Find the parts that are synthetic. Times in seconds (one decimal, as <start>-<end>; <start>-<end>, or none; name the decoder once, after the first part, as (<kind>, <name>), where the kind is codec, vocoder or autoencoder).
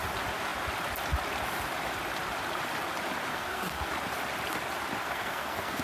3.3-3.9 (codec, SNAC); 5.0-5.8